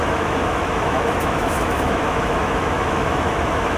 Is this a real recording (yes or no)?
no